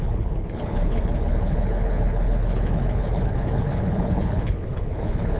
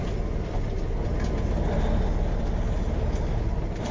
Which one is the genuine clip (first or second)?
second